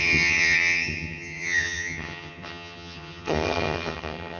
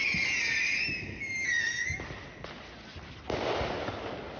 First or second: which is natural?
second